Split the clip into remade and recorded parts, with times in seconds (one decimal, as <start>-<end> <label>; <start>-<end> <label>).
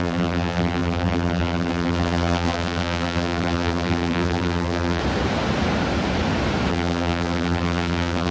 0.0-5.0 remade; 5.0-6.7 recorded; 6.7-8.3 remade